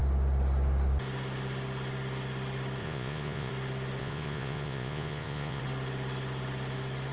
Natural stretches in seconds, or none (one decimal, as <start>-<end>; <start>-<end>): 0.0-2.8; 3.5-4.0; 5.6-7.1